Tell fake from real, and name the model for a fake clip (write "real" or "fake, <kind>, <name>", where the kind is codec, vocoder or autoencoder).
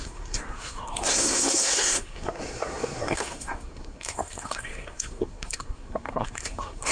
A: fake, codec, SNAC